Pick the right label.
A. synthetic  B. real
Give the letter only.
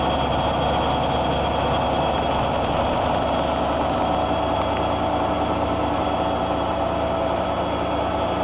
B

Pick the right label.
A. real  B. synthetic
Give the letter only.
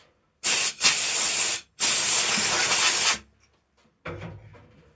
B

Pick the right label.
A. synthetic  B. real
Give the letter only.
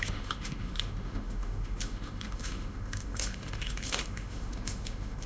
A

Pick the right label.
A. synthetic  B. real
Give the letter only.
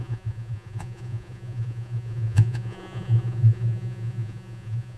A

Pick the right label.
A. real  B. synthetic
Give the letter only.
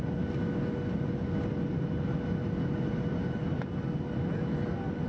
A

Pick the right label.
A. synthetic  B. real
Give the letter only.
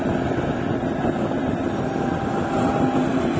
B